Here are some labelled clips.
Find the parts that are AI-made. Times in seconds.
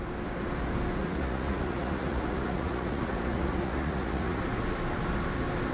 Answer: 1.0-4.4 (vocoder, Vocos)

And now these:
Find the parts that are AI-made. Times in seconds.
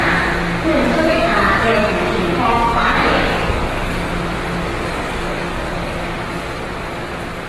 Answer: 0.7-4.1 (codec, DAC); 4.6-6.0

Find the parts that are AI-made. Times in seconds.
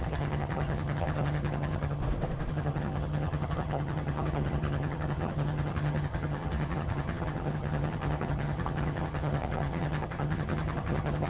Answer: 0.0-2.0 (vocoder, HiFi-GAN); 2.5-11.3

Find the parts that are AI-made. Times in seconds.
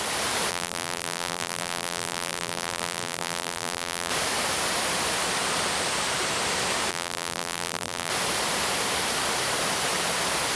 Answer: 0.5-4.1 (vocoder, BigVGAN v2); 6.9-8.1